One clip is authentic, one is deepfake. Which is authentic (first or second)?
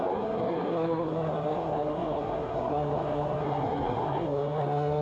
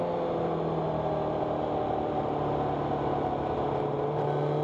second